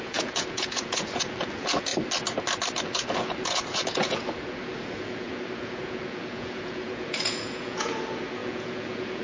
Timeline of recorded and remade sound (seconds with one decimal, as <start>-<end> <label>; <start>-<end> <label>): 0.0-1.9 remade; 1.9-2.8 recorded; 2.8-9.2 remade